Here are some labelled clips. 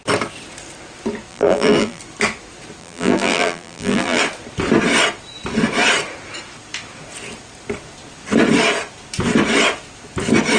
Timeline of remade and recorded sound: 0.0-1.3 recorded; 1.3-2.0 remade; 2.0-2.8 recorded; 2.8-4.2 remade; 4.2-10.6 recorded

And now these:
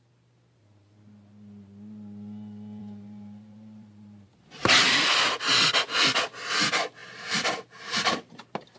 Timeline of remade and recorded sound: 0.0-2.8 recorded; 2.8-4.9 remade; 4.9-7.0 recorded; 7.0-8.8 remade

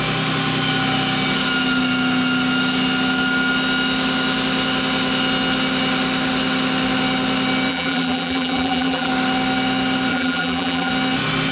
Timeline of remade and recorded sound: 0.0-7.7 recorded; 7.7-9.1 remade; 9.1-10.1 recorded; 10.1-10.9 remade; 10.9-11.5 recorded